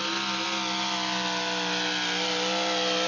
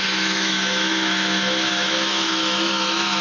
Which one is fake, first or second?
second